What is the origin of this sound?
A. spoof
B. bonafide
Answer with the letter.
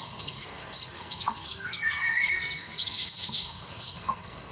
A